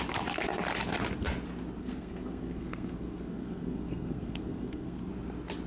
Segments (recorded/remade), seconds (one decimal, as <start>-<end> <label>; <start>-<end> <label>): 0.0-1.8 recorded; 1.8-5.1 remade; 5.1-5.7 recorded